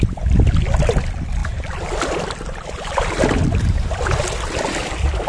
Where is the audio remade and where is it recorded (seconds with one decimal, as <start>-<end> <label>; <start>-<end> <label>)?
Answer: 0.0-1.4 recorded; 1.4-4.2 remade; 4.2-5.3 recorded